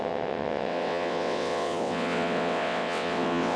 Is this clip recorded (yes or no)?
no